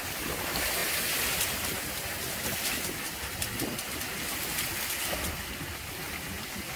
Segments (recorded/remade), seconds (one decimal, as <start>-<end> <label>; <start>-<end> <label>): 0.0-6.8 recorded